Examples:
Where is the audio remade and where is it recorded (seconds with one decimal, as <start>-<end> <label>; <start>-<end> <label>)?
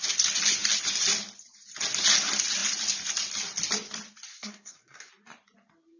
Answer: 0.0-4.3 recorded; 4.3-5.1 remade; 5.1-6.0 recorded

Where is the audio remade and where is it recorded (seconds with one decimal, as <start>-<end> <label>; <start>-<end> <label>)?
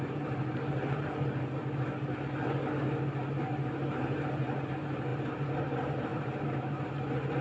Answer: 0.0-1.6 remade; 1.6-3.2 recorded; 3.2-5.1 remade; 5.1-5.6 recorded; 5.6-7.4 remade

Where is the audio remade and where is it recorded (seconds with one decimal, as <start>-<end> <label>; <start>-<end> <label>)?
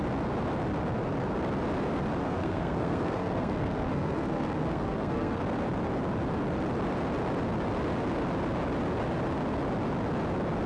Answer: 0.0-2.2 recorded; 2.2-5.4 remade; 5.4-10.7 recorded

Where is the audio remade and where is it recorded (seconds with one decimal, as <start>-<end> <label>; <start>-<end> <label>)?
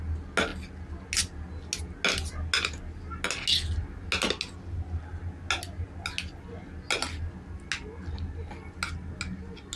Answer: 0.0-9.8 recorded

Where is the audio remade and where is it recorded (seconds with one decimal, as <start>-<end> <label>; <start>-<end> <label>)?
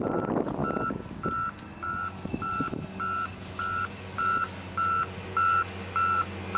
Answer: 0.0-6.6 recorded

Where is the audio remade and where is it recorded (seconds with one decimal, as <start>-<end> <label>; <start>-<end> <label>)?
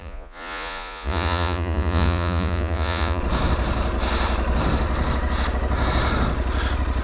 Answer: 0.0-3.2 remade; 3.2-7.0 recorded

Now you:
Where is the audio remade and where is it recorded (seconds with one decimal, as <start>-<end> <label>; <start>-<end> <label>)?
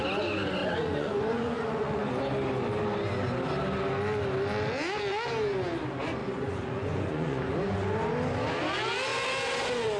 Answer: 0.0-0.6 recorded; 0.6-2.1 remade; 2.1-6.2 recorded; 6.2-7.4 remade; 7.4-10.0 recorded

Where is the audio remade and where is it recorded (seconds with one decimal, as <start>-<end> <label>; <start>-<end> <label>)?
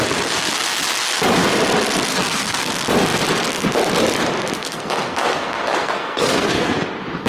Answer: 0.0-2.1 recorded; 2.1-2.7 remade; 2.7-4.6 recorded; 4.6-6.8 remade; 6.8-7.3 recorded